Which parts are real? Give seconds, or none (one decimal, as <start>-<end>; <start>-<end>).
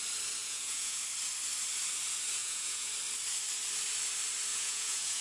0.0-0.4; 1.0-2.4; 2.9-4.5